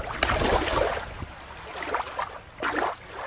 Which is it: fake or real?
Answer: real